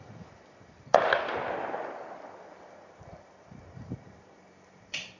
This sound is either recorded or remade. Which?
remade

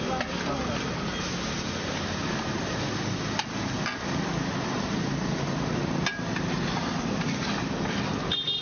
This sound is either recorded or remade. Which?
recorded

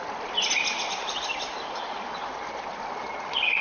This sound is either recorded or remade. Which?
recorded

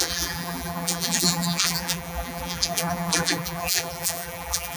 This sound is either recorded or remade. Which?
remade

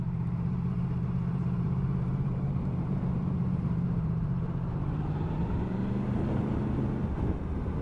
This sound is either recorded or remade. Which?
remade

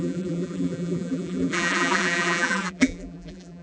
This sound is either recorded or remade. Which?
remade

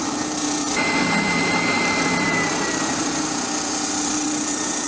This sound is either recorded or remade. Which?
remade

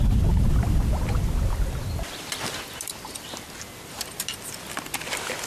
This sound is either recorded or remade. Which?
recorded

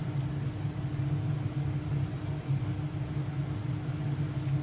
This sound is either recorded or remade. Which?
recorded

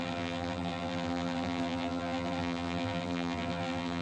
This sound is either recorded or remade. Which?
remade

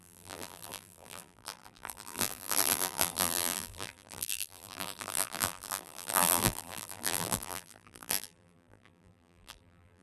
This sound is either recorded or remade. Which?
remade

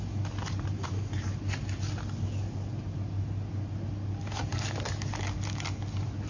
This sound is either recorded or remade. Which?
recorded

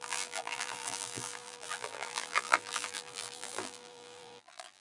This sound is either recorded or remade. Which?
remade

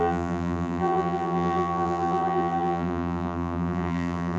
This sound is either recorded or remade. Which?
remade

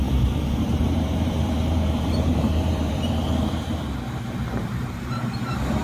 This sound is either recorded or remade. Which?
remade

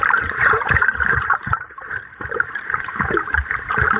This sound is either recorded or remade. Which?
remade